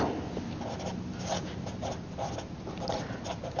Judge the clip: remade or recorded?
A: recorded